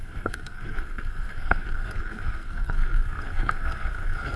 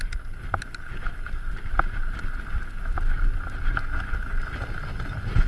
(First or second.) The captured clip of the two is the second